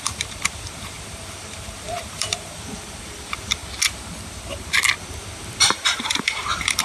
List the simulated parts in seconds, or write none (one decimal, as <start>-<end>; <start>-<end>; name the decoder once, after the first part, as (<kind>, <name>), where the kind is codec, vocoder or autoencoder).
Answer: 0.0-3.6 (vocoder, BigVGAN v2); 5.0-6.8